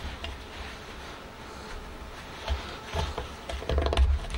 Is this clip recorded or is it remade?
recorded